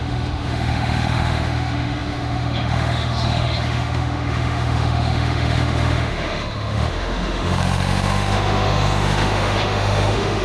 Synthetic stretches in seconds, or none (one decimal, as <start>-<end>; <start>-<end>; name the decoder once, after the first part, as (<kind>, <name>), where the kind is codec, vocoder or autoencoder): 0.0-10.4 (autoencoder, DAC-VAE)